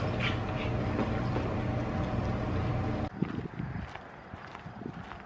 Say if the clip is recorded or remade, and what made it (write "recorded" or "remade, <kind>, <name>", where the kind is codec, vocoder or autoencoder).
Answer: recorded